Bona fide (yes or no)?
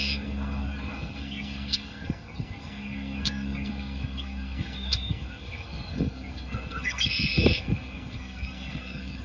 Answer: no